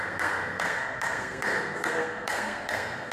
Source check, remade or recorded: remade